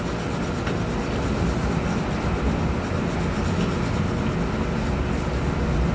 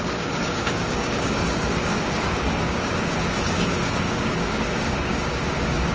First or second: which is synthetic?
second